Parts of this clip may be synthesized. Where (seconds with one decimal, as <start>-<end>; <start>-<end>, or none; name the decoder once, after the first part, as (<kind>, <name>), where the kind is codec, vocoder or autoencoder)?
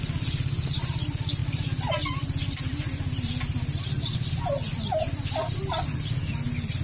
none